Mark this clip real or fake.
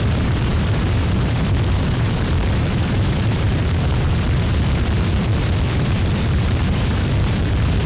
fake